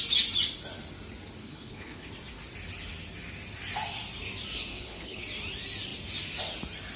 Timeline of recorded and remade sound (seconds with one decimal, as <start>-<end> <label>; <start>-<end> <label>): 0.0-1.4 recorded; 1.4-2.1 remade; 2.1-4.7 recorded; 4.7-5.2 remade; 5.2-7.0 recorded